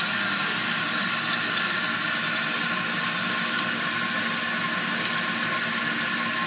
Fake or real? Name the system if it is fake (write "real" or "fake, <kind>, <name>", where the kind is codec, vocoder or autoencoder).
real